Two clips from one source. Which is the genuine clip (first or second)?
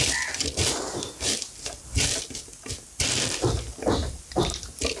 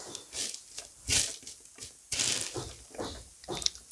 second